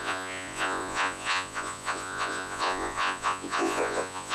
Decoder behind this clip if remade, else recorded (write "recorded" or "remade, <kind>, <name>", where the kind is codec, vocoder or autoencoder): remade, vocoder, Vocos